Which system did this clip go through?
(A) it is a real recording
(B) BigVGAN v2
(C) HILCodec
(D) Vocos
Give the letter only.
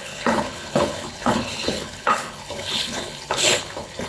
C